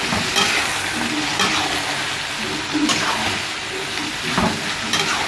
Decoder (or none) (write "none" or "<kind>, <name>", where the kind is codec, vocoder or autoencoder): none